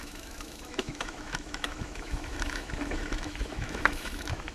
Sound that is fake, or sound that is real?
fake